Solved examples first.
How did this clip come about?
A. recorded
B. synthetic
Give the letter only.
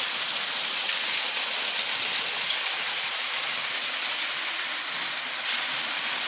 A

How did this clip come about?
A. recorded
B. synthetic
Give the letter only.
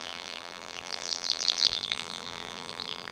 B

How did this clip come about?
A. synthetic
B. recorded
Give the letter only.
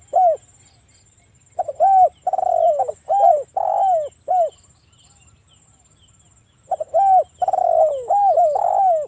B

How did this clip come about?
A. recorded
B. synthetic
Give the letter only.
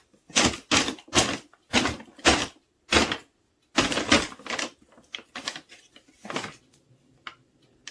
A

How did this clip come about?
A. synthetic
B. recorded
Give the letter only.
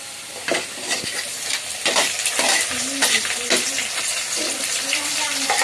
A